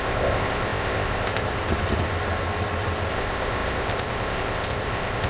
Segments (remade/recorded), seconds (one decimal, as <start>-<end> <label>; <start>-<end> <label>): 0.0-1.6 remade; 1.6-3.1 recorded; 3.1-5.3 remade